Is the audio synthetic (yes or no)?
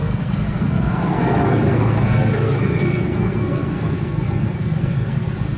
yes